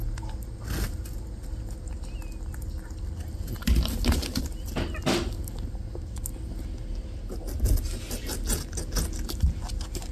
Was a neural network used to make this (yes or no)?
no